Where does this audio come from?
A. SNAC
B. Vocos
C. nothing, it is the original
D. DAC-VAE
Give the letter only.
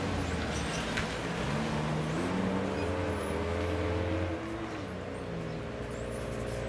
C